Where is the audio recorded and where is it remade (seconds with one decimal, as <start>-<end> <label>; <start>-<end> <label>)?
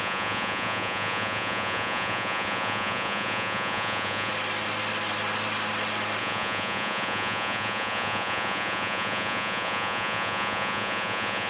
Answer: 0.0-4.3 remade; 4.3-6.2 recorded; 6.2-11.5 remade